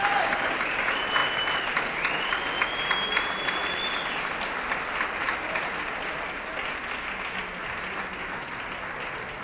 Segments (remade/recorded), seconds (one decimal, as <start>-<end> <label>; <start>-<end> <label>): 0.0-9.4 recorded